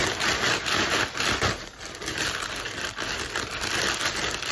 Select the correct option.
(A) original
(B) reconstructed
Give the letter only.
A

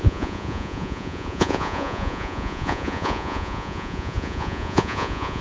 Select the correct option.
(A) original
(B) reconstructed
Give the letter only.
B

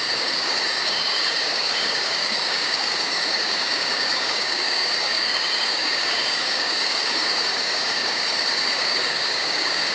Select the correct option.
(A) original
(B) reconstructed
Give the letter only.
B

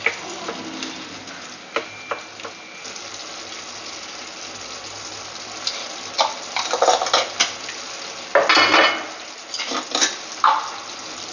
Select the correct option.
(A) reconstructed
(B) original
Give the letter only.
B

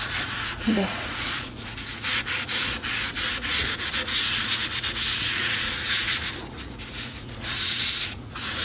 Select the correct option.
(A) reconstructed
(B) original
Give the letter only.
A